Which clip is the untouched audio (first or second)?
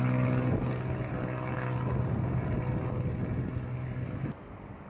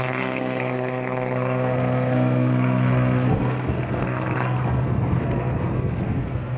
first